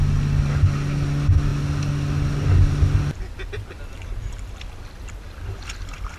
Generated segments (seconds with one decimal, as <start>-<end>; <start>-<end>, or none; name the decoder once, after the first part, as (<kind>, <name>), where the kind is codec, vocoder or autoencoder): none